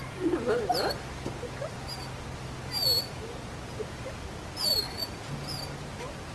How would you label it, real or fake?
real